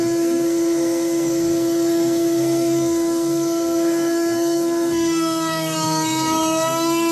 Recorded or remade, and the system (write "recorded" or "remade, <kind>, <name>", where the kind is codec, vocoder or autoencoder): remade, codec, SNAC